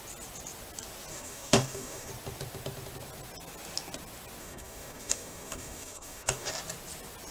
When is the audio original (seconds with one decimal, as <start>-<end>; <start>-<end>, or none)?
0.0-1.1; 2.1-4.4; 6.5-7.3